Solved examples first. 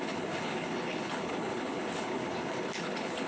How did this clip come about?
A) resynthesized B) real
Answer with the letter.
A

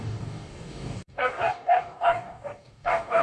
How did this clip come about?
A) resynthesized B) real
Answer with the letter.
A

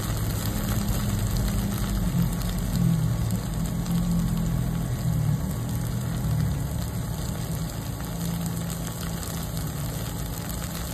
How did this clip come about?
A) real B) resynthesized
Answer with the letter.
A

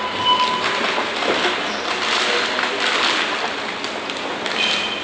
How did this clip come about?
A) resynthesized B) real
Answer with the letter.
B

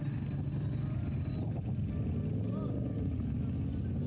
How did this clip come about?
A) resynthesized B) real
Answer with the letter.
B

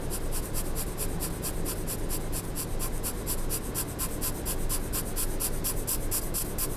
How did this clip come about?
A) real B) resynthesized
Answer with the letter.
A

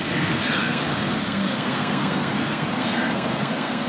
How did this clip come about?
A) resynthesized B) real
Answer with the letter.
A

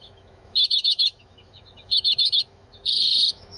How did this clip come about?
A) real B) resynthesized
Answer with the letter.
B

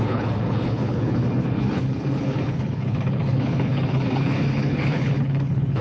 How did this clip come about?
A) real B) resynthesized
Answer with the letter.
B